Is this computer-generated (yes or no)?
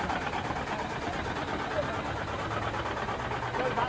no